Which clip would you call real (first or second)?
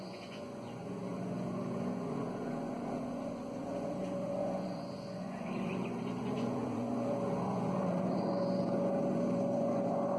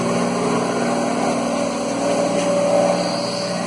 second